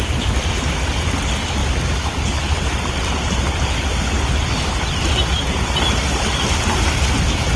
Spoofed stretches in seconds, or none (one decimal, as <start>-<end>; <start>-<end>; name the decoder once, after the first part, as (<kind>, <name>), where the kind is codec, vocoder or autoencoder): none